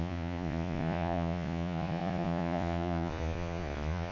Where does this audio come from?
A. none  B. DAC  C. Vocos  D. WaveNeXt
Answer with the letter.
C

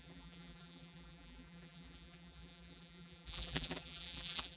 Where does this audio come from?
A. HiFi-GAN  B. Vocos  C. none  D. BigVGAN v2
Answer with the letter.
D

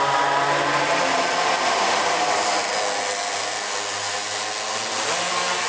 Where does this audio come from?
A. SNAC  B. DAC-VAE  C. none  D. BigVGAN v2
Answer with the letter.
C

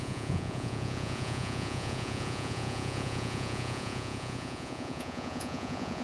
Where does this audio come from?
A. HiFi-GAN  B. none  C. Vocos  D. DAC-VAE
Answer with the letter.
C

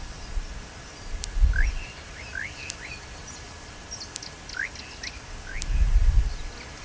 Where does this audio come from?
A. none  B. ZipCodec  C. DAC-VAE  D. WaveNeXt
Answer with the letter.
A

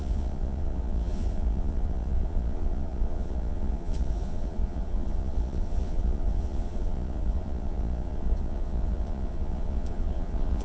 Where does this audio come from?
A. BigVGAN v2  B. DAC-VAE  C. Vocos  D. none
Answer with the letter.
C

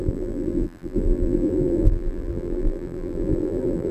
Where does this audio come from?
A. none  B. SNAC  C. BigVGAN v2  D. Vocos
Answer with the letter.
C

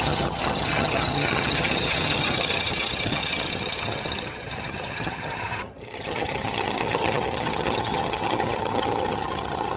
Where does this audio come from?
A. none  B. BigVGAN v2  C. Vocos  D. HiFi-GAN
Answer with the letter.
D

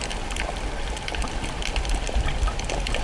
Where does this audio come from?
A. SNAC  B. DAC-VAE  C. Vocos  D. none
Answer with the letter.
D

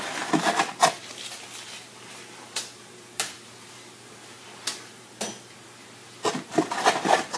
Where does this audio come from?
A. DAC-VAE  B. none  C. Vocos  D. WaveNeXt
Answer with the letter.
B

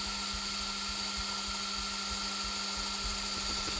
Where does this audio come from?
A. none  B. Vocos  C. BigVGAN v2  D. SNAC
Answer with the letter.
A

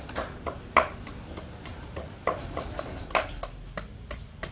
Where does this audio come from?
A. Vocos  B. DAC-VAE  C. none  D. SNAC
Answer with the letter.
C